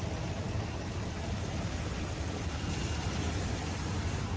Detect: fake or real real